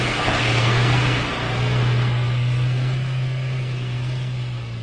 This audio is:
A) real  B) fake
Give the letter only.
B